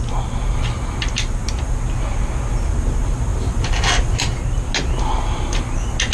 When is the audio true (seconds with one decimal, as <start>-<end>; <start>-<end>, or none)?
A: 0.0-6.1